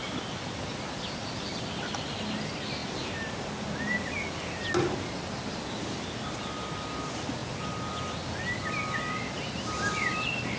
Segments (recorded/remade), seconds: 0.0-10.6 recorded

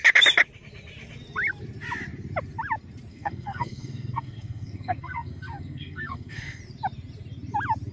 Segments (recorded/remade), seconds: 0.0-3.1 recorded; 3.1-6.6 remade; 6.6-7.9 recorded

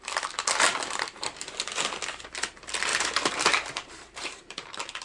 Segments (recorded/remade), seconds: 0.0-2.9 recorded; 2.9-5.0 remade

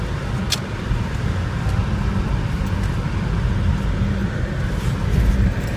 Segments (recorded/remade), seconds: 0.0-5.8 recorded

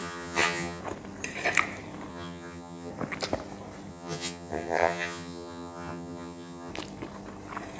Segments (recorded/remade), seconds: 0.0-0.8 remade; 0.8-2.1 recorded; 2.1-2.9 remade; 2.9-3.9 recorded; 3.9-6.7 remade; 6.7-7.8 recorded

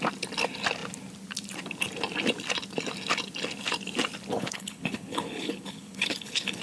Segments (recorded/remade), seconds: 0.0-4.3 recorded; 4.3-6.6 remade

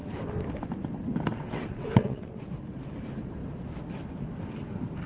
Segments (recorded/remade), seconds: 0.0-1.3 recorded; 1.3-2.4 remade; 2.4-5.1 recorded